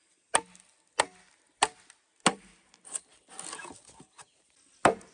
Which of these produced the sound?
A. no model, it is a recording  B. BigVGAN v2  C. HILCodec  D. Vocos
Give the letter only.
A